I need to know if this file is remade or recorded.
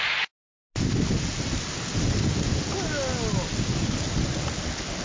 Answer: recorded